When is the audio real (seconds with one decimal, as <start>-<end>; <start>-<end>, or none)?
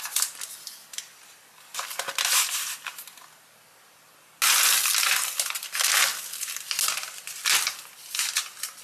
2.9-5.2